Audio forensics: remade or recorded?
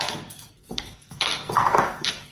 remade